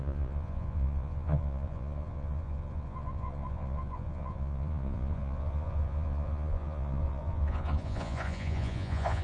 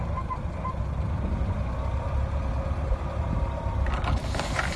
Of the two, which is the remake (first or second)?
first